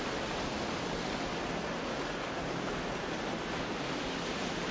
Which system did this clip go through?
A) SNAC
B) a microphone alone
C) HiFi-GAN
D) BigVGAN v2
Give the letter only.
B